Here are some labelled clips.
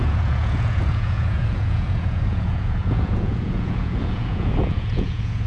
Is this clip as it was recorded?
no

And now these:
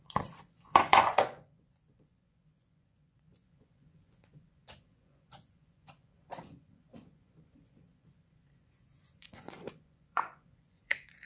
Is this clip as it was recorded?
no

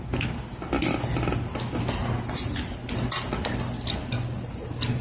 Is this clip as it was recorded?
yes